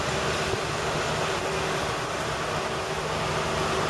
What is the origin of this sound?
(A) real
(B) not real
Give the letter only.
A